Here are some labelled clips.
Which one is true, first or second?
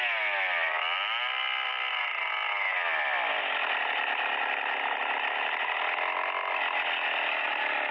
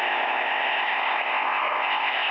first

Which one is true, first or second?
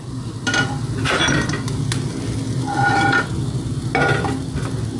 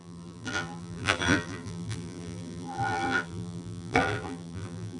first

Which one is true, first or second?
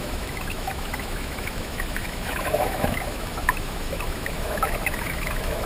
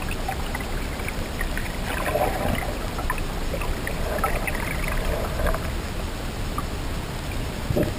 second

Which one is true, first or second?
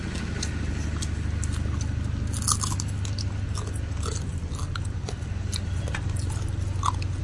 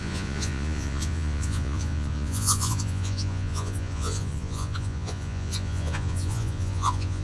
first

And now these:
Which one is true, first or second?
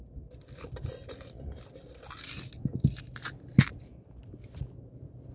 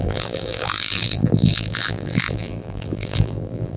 first